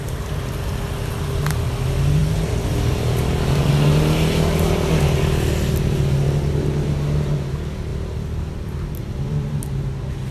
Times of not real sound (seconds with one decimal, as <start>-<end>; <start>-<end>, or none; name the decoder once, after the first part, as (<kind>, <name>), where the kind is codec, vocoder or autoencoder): 2.2-3.7 (vocoder, BigVGAN v2); 7.9-9.6